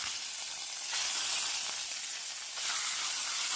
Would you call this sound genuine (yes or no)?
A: yes